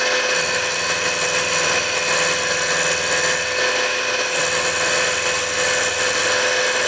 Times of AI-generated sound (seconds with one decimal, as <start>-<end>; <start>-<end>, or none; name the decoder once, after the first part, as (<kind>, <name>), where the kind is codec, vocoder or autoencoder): none